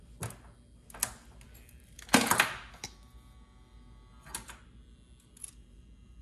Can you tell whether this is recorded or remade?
recorded